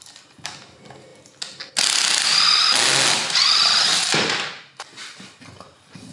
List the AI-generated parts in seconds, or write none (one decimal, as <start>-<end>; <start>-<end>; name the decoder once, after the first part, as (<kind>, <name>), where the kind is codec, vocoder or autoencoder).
none